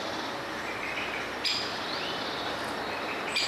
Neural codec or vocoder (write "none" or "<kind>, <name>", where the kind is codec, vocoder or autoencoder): vocoder, BigVGAN v2